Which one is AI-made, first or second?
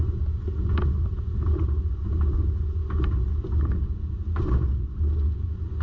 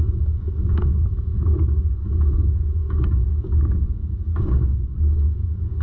second